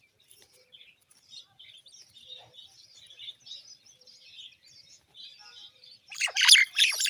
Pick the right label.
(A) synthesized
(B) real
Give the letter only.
A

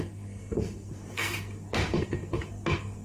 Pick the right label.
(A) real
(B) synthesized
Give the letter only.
B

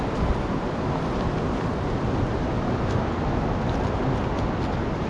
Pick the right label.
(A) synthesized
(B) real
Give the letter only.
B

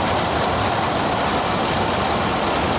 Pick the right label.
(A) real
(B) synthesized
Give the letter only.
B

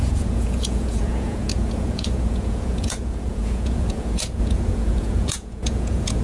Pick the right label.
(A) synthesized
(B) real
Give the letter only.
A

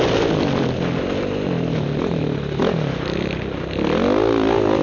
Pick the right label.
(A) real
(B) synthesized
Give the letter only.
A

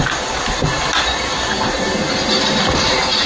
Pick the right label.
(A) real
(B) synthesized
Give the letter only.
A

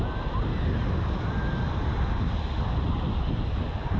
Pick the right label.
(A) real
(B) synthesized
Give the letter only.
A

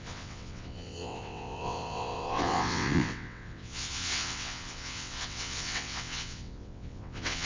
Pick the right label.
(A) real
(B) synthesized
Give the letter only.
B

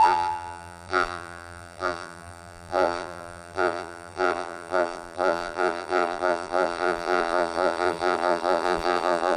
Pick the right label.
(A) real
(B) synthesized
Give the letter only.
B